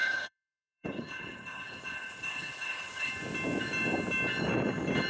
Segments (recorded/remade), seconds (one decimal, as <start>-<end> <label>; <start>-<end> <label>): 0.0-3.1 remade; 3.1-5.1 recorded